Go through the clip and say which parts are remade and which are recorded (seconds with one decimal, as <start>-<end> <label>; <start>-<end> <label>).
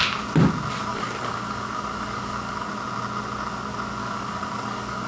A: 0.0-0.9 recorded; 0.9-2.7 remade; 2.7-4.0 recorded; 4.0-5.1 remade